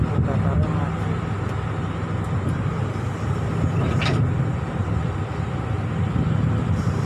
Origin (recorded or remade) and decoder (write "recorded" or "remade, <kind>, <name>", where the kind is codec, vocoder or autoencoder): recorded